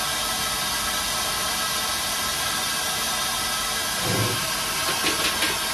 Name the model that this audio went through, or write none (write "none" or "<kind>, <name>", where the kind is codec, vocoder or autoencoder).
none